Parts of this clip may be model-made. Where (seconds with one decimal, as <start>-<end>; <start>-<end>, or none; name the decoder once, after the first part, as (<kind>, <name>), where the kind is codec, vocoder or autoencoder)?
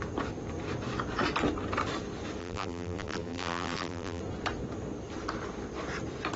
2.4-4.2 (vocoder, BigVGAN v2)